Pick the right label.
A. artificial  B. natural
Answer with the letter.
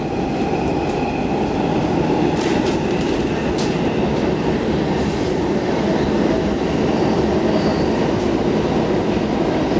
B